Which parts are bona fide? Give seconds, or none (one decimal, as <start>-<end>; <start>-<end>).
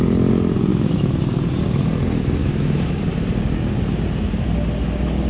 0.0-0.7; 1.2-2.4; 3.0-5.3